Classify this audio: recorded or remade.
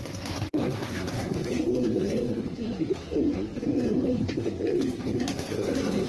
remade